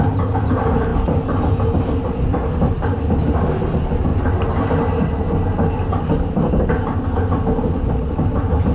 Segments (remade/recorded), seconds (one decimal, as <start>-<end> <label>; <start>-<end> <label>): 0.0-8.7 recorded